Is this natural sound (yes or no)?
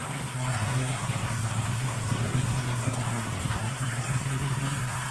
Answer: no